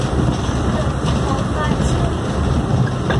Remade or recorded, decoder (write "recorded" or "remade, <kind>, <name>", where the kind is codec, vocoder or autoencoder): recorded